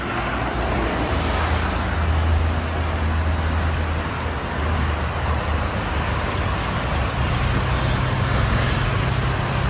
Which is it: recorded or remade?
recorded